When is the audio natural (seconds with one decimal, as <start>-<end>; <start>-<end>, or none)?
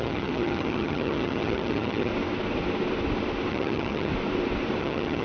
2.1-3.5; 4.1-4.8